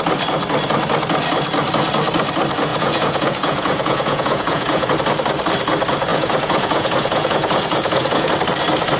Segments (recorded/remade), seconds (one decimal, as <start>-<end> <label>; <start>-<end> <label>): 0.0-2.7 recorded; 2.7-4.9 remade; 4.9-6.1 recorded; 6.1-8.3 remade; 8.3-9.0 recorded